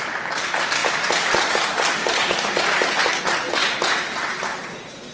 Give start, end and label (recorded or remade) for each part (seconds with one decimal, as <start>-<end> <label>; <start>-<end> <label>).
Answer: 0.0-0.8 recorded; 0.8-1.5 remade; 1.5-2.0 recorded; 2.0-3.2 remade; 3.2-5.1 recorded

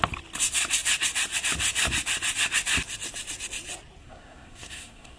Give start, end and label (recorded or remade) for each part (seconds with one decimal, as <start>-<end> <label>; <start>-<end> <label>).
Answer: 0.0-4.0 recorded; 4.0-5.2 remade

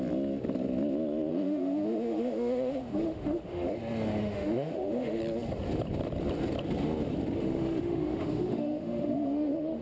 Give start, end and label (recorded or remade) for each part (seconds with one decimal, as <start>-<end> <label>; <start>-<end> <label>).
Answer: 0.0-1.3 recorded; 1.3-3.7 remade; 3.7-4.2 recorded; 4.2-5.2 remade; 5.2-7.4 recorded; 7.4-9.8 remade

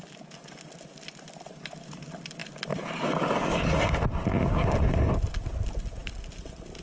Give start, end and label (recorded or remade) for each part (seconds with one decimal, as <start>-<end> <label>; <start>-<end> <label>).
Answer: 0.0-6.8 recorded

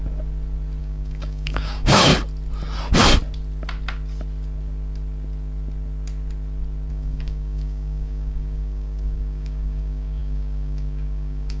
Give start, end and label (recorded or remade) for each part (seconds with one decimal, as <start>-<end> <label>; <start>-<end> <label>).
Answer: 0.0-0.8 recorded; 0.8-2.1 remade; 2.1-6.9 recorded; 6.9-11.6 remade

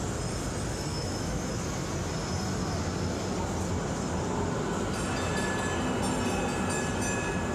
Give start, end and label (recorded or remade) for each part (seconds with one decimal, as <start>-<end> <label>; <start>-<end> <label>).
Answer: 0.0-0.9 recorded; 0.9-1.5 remade; 1.5-7.5 recorded